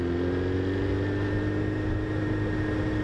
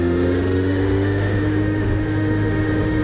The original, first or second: first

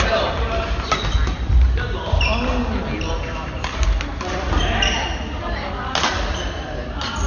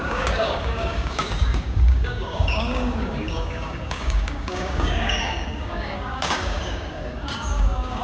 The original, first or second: first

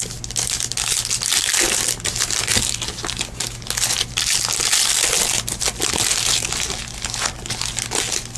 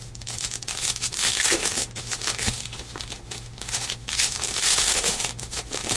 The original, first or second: first